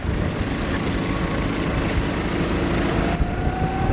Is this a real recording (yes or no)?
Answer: yes